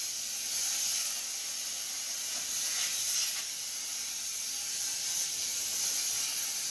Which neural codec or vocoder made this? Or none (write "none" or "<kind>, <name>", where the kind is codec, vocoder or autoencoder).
none